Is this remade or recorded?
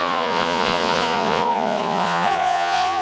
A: remade